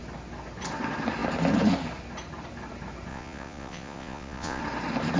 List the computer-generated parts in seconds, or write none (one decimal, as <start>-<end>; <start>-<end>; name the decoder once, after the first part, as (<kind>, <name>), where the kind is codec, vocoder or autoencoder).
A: 3.1-4.6 (vocoder, Vocos)